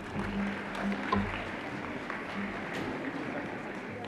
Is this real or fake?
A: real